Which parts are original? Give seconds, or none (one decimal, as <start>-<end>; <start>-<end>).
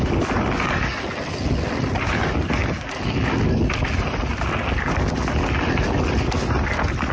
0.0-7.1